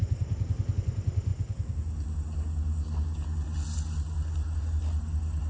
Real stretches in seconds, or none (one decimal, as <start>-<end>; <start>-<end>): 0.0-5.5